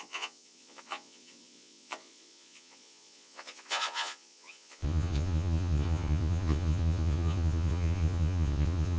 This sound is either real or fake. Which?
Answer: fake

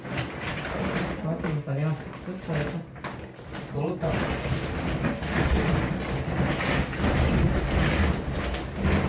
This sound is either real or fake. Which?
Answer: real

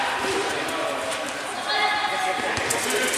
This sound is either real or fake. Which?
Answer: real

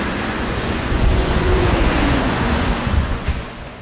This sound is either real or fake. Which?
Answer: fake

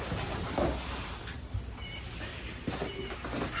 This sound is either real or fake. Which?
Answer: real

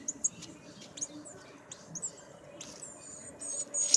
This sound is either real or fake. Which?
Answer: real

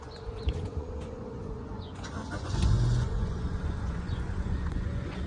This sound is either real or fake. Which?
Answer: fake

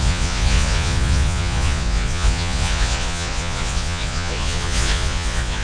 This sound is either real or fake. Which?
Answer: fake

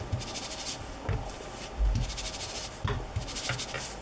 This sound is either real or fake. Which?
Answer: real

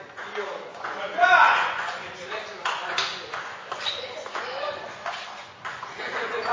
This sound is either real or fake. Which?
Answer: fake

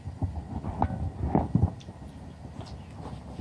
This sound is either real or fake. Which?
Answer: real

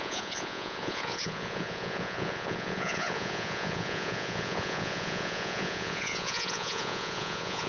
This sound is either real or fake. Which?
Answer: fake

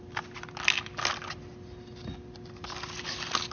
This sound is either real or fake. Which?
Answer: real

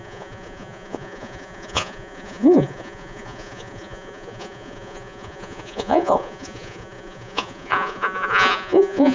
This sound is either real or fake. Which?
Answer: fake